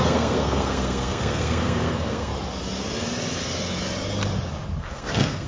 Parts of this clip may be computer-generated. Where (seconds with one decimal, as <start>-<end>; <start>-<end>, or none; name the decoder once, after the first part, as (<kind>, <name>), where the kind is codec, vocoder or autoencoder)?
0.0-2.3 (codec, SNAC); 4.8-5.5